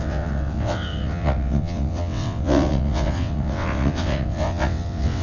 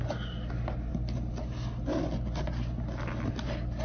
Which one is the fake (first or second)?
first